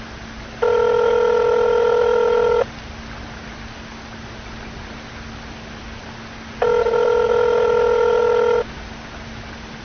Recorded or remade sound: recorded